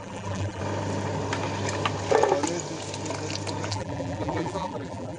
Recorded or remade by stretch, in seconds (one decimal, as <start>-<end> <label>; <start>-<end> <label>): 0.0-0.6 remade; 0.6-3.7 recorded; 3.7-5.2 remade